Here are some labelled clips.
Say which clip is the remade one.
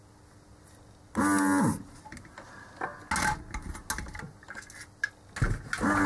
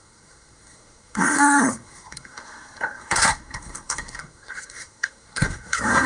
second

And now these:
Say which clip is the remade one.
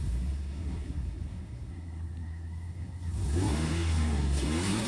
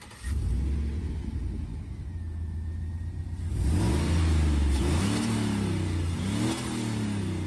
first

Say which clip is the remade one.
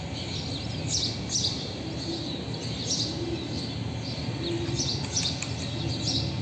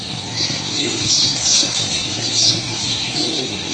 second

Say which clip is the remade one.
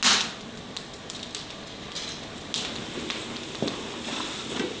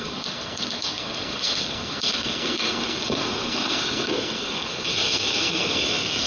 second